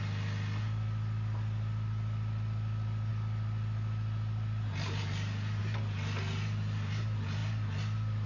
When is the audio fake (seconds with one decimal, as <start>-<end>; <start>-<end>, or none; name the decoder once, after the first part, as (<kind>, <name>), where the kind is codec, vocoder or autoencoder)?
none

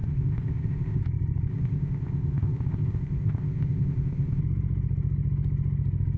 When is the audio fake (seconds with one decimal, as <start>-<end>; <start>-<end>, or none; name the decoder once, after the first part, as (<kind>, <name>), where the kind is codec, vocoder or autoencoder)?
0.0-1.0 (codec, ZipCodec); 1.5-4.4

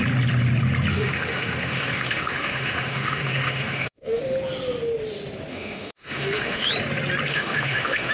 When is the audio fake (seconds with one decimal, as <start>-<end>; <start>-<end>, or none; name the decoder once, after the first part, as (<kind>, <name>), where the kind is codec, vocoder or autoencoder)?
0.9-4.2 (autoencoder, DAC-VAE); 5.5-6.7; 7.3-8.1

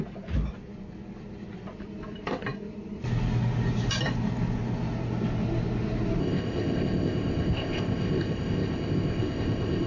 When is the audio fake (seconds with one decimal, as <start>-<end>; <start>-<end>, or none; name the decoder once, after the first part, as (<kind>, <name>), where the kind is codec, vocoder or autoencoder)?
6.2-9.9 (codec, ZipCodec)